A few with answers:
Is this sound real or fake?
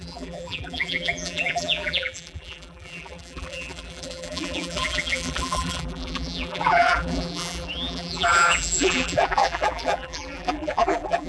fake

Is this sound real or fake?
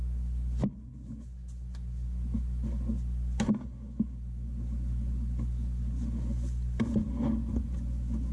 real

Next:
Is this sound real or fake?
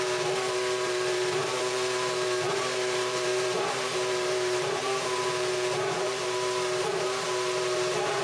fake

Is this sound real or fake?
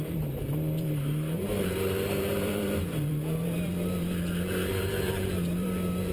fake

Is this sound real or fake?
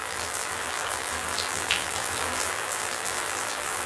fake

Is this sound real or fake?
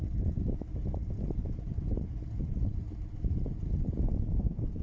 real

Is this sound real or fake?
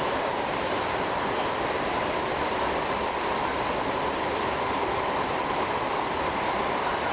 fake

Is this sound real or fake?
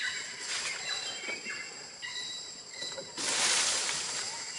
fake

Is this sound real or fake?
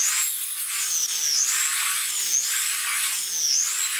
real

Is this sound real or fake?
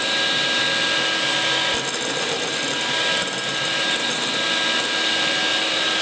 real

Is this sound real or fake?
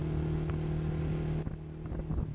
real